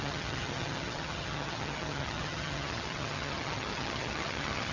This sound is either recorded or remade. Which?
remade